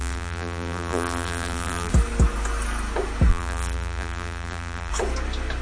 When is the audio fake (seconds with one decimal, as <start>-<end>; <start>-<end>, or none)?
0.0-1.9; 3.3-4.9